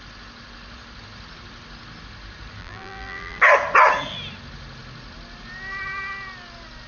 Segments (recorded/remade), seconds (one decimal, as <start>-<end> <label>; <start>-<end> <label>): 0.0-2.6 recorded; 2.6-3.4 remade; 3.4-6.9 recorded